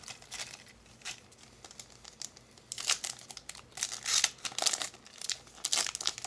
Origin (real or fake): real